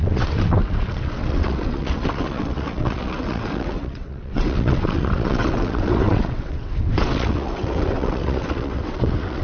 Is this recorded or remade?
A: remade